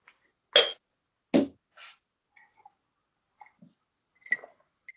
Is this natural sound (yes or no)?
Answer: yes